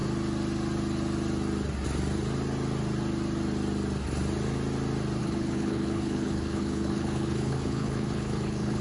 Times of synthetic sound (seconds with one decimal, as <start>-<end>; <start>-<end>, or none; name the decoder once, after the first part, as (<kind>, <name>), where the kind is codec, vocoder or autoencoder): 5.2-8.8 (codec, HILCodec)